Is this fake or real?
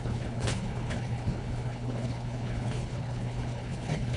fake